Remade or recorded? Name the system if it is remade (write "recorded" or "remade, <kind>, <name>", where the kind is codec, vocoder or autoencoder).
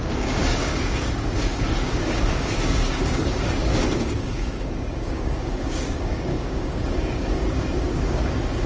remade, codec, DAC